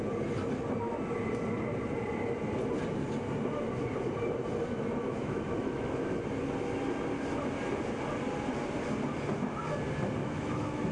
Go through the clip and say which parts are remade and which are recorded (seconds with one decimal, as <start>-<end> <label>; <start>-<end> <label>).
0.0-5.2 recorded; 5.2-6.2 remade; 6.2-10.2 recorded; 10.2-10.9 remade